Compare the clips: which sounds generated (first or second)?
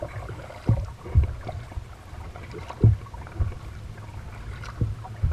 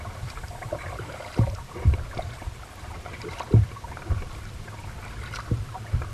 second